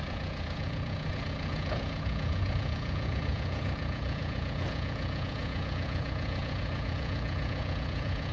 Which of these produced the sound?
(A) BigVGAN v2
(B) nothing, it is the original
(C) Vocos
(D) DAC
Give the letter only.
C